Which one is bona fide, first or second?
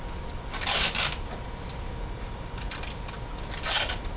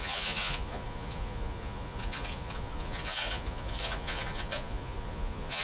first